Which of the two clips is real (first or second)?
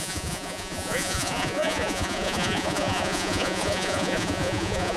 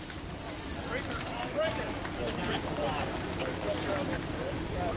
second